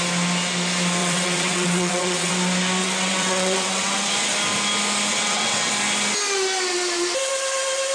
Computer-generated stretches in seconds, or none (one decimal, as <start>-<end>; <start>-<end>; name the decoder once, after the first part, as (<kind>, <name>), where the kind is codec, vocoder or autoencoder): 1.0-2.3 (vocoder, WaveNeXt); 2.8-4.1; 5.1-5.7